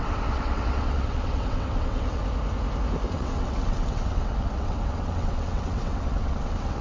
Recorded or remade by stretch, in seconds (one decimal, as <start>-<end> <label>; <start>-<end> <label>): 0.0-2.2 remade; 2.2-3.1 recorded; 3.1-6.8 remade